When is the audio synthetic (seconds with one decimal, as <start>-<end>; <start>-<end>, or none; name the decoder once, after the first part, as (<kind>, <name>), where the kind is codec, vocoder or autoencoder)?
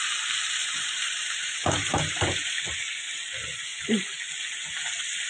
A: 0.6-2.6 (vocoder, BigVGAN v2)